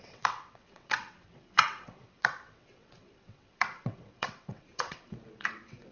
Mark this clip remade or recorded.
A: remade